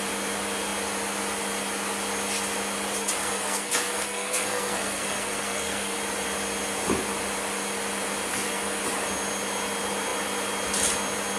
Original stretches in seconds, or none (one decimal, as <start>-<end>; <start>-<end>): 0.0-3.2; 6.0-8.3; 8.8-11.4